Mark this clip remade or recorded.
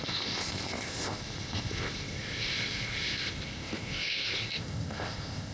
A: remade